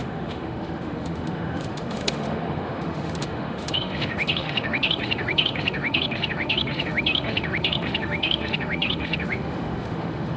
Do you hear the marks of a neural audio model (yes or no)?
yes